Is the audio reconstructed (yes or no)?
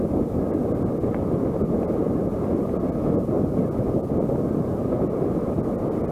no